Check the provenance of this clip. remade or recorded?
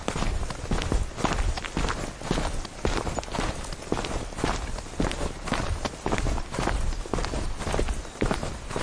recorded